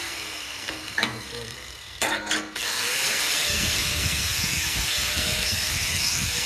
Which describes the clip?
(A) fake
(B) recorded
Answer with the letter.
A